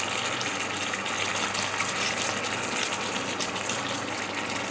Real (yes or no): yes